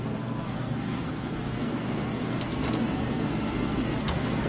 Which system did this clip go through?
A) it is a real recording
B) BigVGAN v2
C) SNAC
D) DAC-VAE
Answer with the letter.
C